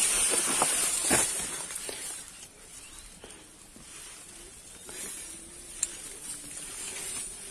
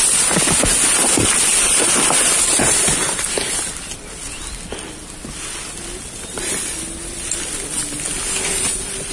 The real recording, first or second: second